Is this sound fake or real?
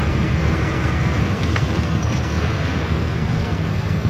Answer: fake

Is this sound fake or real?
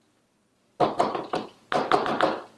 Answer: real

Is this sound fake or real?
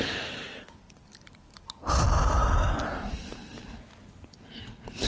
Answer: real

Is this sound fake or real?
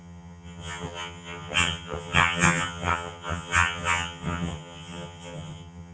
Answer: fake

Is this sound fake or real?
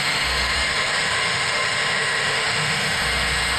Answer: fake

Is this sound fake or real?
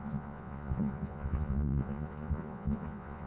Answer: fake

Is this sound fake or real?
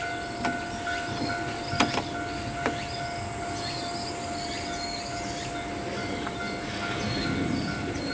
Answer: real